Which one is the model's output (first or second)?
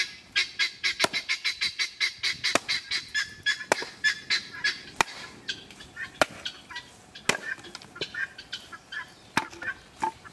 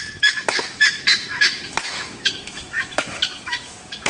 second